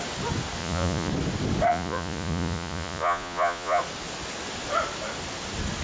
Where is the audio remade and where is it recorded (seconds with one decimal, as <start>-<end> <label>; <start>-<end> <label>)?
0.0-0.6 recorded; 0.6-1.1 remade; 1.1-1.7 recorded; 1.7-3.8 remade; 3.8-5.8 recorded